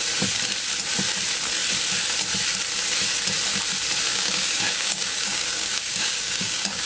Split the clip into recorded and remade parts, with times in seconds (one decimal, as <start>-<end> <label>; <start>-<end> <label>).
0.0-4.1 recorded; 4.1-6.9 remade